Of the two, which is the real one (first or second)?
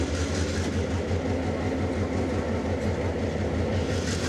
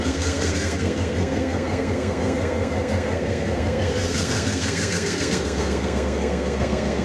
first